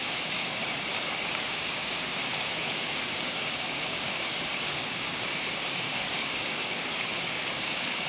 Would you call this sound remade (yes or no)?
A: yes